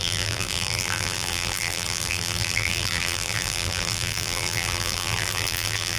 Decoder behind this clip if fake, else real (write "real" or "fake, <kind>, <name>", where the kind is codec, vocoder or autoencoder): fake, vocoder, BigVGAN v2